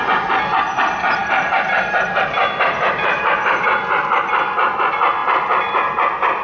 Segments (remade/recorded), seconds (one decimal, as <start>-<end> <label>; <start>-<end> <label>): 0.0-6.4 recorded